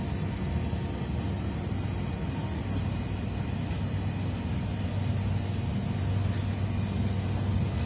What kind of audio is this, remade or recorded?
recorded